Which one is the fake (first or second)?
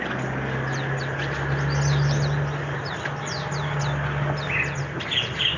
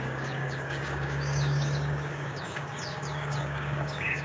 second